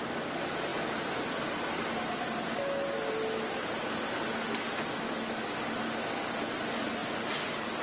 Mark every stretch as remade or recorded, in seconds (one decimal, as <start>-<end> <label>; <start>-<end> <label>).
0.0-7.8 recorded